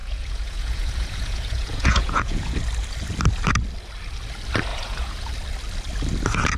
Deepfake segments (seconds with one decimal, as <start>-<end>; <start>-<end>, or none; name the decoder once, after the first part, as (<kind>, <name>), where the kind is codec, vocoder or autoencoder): 0.0-2.6 (vocoder, Vocos); 4.7-5.3